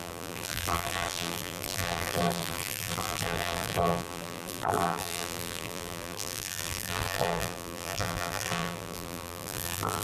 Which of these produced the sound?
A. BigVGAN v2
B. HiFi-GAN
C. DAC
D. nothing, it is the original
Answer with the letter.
A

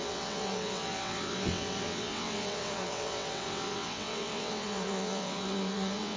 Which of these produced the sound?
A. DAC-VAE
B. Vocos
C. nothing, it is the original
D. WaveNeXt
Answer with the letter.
D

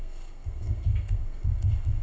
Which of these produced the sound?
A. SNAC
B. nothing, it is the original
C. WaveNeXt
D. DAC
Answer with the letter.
A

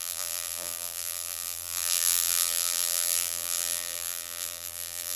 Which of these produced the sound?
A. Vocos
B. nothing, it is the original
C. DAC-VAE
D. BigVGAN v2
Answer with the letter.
D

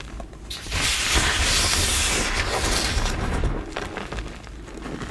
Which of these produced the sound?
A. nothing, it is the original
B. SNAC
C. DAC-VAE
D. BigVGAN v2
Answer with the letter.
A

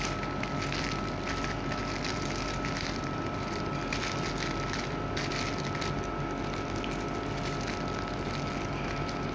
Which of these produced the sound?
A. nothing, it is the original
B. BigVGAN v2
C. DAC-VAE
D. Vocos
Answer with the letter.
A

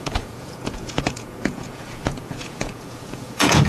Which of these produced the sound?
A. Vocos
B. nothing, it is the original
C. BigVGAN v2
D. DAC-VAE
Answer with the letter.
A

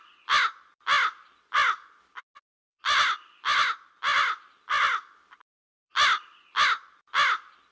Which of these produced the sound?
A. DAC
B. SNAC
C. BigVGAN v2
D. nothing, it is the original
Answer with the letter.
D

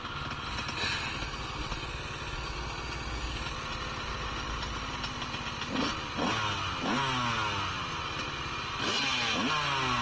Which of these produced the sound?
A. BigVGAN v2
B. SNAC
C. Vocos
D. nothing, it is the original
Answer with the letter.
D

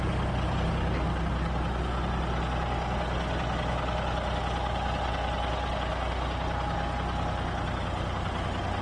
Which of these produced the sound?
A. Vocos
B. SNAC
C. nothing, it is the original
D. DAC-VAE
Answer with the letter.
C